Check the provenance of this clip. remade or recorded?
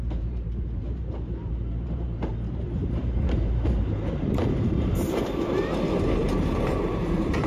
remade